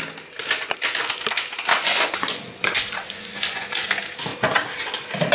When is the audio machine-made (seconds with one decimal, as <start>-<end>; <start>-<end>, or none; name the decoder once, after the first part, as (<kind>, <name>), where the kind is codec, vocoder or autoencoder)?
1.7-3.9 (vocoder, Vocos)